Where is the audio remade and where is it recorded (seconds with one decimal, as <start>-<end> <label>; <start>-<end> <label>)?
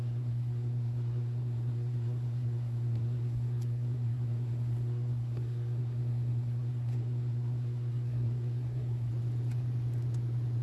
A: 0.0-9.1 remade; 9.1-10.6 recorded